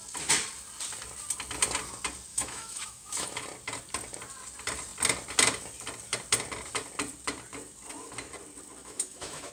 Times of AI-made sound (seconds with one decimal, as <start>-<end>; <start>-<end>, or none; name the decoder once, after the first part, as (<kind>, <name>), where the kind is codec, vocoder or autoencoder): 2.3-3.4 (autoencoder, DAC-VAE); 8.8-9.5